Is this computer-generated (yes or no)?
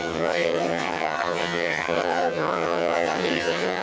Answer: yes